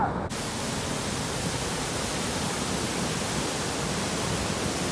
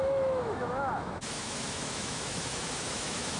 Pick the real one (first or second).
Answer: first